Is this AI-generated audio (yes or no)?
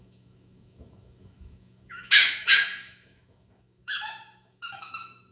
yes